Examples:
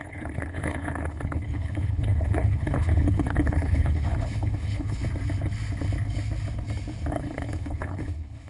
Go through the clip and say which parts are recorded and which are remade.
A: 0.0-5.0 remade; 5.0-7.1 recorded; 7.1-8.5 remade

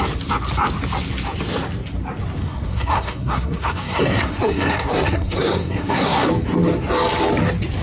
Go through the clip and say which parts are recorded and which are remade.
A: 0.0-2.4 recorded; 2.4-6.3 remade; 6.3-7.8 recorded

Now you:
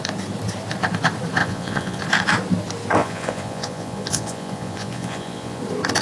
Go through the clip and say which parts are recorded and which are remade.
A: 0.0-1.4 recorded; 1.4-2.0 remade; 2.0-3.0 recorded; 3.0-5.6 remade; 5.6-6.0 recorded

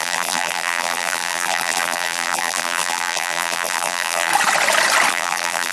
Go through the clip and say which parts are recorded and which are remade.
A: 0.0-4.3 remade; 4.3-5.1 recorded; 5.1-5.7 remade

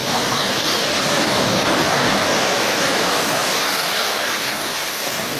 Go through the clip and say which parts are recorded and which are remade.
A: 0.0-5.4 remade

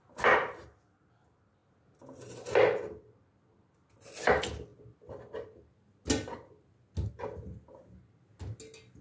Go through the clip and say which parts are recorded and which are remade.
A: 0.0-9.0 recorded

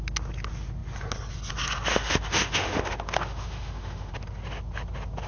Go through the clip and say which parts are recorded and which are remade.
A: 0.0-1.9 recorded; 1.9-4.1 remade; 4.1-5.3 recorded